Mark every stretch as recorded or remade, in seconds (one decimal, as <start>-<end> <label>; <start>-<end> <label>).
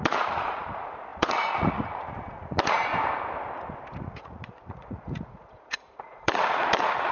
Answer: 0.0-2.9 remade; 2.9-4.0 recorded; 4.0-7.1 remade